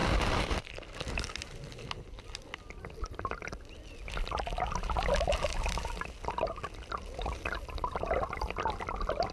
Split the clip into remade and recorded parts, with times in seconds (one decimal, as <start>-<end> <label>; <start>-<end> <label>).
0.0-9.3 recorded